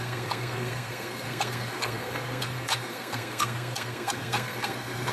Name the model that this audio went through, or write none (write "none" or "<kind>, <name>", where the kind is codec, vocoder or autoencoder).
codec, SNAC